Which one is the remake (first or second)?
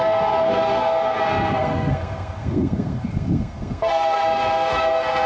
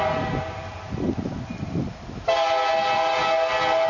first